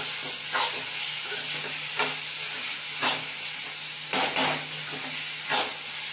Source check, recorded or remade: recorded